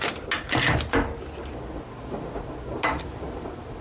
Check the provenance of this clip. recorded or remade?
recorded